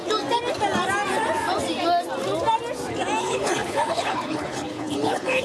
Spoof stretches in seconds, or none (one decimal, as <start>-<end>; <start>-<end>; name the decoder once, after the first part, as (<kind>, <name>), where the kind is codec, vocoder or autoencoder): 3.2-5.4 (codec, HILCodec)